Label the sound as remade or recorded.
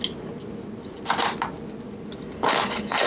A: recorded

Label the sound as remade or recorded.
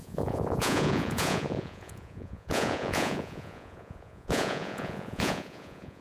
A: remade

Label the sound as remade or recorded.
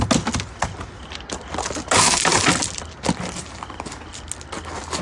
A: recorded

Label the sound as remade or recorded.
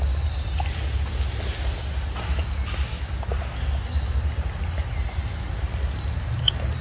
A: recorded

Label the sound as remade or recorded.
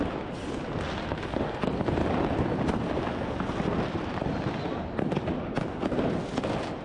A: recorded